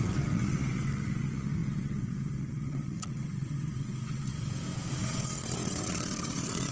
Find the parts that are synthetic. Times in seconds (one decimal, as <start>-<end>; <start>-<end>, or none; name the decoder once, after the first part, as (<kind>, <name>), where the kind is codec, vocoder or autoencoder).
0.0-4.3 (vocoder, WaveNeXt); 4.9-6.7